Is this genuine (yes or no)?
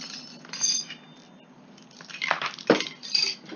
no